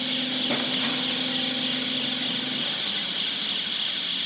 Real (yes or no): yes